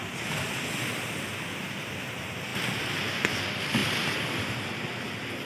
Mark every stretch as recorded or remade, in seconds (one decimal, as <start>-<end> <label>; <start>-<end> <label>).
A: 0.0-2.5 recorded; 2.5-3.1 remade; 3.1-5.5 recorded